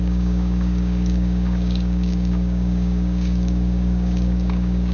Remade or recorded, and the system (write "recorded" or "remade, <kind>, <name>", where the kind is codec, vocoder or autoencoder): remade, codec, DAC